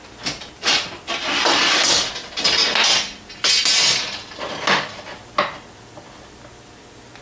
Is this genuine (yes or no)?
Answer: yes